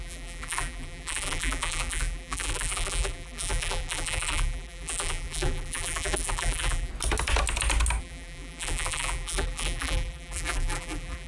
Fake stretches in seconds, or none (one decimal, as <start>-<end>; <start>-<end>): 0.0-6.9; 8.0-11.3